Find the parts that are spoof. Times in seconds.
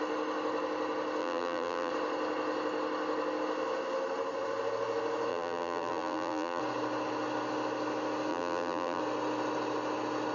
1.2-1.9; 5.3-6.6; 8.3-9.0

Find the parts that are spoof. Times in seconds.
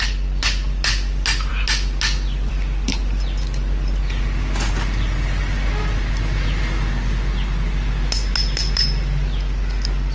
none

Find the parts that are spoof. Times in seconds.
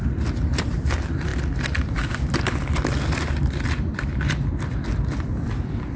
0.0-1.3; 2.1-6.0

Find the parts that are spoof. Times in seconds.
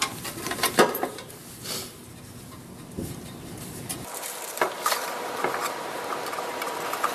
0.0-1.4; 2.0-7.1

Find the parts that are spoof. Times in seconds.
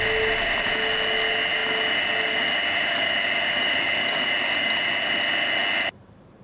none